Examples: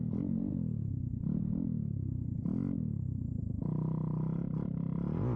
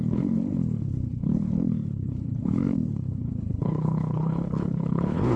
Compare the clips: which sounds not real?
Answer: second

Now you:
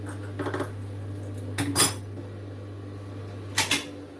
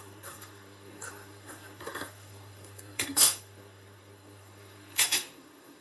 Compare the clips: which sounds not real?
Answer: second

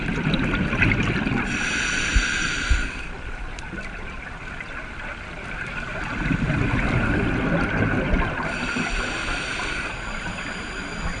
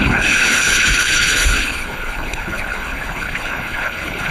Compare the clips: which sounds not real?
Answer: second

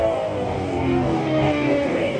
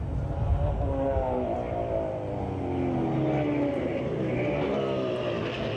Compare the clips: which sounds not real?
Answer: first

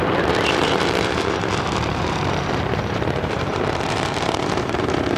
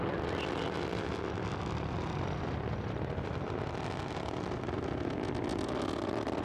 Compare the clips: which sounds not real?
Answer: first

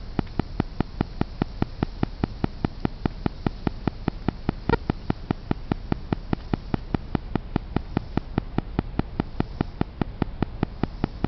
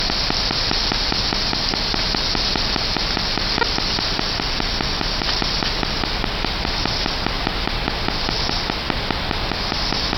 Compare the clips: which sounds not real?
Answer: second